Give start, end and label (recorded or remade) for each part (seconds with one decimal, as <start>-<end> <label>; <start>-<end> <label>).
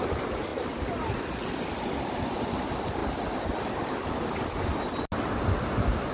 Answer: 0.0-6.1 recorded